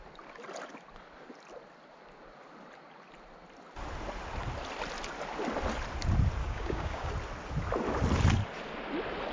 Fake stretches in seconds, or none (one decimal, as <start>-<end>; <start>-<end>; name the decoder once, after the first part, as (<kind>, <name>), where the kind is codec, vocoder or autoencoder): 6.4-7.1 (codec, DAC)

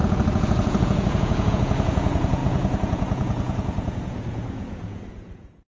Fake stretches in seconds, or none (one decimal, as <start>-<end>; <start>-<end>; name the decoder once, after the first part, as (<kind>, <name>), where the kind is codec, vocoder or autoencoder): 0.0-5.8 (vocoder, Vocos)